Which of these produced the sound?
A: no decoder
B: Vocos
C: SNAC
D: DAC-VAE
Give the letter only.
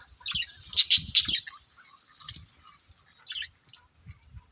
A